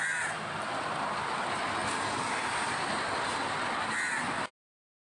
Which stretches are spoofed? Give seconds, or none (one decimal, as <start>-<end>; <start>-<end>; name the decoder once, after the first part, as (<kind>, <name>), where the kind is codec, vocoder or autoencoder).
none